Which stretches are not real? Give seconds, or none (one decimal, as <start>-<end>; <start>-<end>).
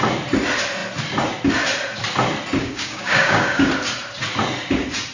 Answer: 2.6-3.7